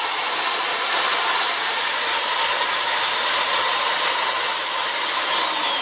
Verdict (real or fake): real